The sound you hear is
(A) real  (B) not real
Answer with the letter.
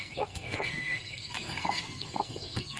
B